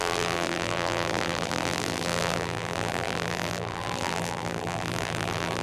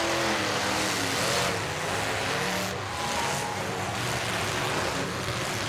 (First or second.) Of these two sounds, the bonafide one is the second